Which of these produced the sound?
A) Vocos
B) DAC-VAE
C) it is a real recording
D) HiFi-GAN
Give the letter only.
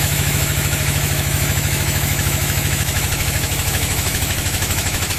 B